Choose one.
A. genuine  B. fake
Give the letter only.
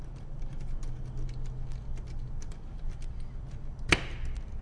A